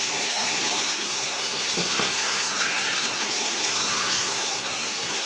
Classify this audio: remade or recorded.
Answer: remade